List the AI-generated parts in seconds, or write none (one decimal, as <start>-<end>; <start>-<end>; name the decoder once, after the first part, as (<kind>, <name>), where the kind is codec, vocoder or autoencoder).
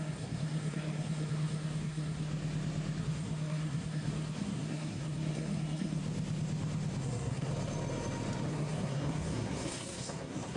0.0-2.3 (codec, SNAC); 3.0-6.0; 7.0-7.5; 8.5-10.6